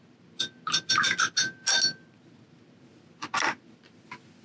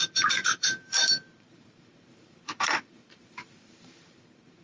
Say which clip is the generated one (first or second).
second